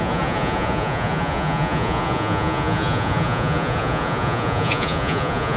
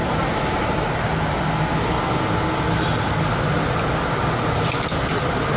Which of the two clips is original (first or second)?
second